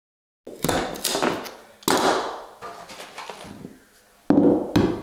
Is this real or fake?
real